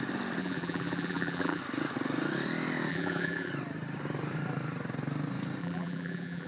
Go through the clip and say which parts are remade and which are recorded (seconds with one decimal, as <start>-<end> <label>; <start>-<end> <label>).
0.0-0.4 recorded; 0.4-1.6 remade; 1.6-2.9 recorded; 2.9-3.5 remade; 3.5-5.6 recorded; 5.6-6.5 remade